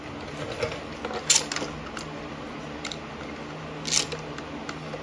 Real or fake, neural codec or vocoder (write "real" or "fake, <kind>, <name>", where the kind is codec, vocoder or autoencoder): real